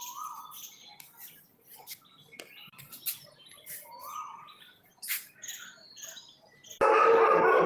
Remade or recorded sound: recorded